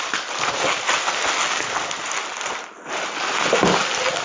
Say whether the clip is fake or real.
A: real